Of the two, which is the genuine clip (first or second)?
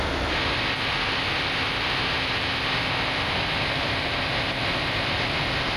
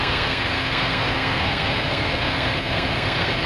first